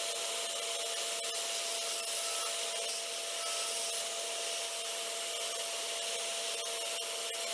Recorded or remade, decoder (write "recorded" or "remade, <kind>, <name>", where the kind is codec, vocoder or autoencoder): recorded